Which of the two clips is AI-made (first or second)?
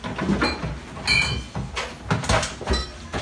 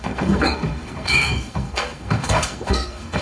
second